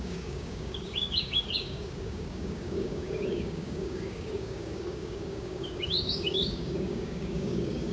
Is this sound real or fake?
fake